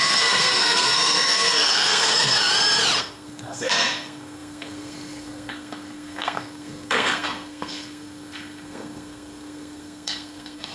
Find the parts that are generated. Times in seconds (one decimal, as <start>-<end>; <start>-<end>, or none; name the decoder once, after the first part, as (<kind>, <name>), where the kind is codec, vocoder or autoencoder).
0.0-2.4 (codec, SNAC); 3.0-10.7

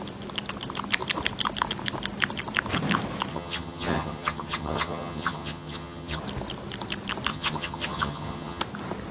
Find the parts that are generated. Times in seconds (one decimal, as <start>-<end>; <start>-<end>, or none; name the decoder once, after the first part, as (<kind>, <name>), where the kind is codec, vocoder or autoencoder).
3.3-6.2 (vocoder, HiFi-GAN); 7.3-8.6

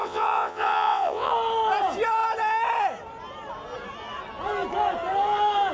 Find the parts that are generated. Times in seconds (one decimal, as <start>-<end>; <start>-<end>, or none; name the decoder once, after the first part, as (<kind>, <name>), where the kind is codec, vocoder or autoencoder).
0.0-1.3 (vocoder, WaveNeXt)